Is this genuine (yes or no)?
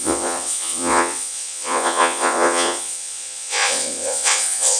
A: no